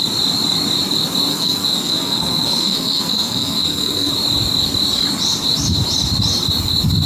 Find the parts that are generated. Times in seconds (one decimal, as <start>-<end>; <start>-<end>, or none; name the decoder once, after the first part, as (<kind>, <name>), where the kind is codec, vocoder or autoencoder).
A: 1.3-4.1 (codec, SNAC)

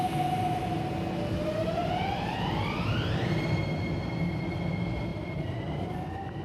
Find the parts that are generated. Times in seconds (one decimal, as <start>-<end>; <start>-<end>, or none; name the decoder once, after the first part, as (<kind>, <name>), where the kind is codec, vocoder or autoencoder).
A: 1.8-3.5 (vocoder, BigVGAN v2); 5.1-5.9

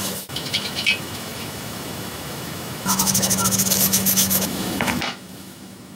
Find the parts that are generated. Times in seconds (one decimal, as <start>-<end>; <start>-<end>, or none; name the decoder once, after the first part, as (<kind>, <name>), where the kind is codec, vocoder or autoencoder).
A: 0.0-6.0 (autoencoder, DAC-VAE)

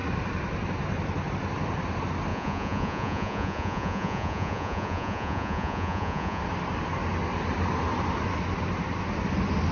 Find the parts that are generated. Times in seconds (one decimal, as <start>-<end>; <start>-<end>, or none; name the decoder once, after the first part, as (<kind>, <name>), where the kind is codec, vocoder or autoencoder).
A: 2.3-6.4 (vocoder, Vocos)

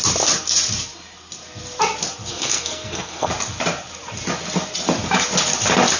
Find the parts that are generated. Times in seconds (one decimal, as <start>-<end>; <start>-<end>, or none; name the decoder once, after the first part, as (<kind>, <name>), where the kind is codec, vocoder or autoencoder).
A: 2.3-3.3 (codec, SNAC)

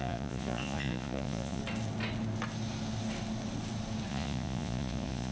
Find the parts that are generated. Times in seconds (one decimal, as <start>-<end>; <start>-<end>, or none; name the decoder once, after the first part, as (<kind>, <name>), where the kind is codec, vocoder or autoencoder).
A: 0.0-1.6 (vocoder, Vocos); 4.1-5.3

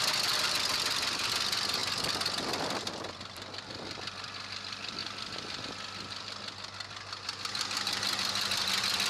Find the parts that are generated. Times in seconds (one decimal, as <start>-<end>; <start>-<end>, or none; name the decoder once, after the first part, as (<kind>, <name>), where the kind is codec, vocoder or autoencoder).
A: 0.0-1.8 (vocoder, BigVGAN v2); 2.5-9.1

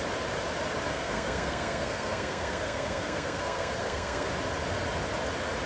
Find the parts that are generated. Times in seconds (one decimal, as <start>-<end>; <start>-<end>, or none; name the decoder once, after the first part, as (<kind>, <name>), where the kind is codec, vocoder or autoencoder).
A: 0.9-4.3 (codec, SNAC)